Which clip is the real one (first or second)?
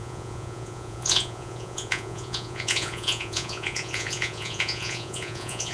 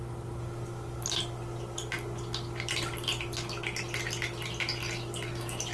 second